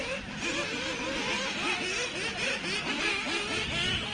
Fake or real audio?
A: real